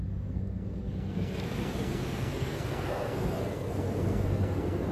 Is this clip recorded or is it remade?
remade